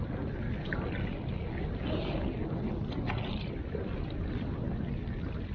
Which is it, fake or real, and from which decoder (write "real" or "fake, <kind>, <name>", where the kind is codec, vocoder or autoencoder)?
real